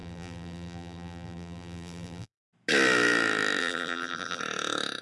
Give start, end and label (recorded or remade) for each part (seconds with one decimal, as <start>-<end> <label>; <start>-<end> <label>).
0.0-2.4 remade; 2.4-3.6 recorded; 3.6-4.4 remade; 4.4-5.0 recorded